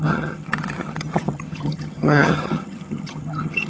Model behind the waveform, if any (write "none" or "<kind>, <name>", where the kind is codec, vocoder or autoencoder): vocoder, HiFi-GAN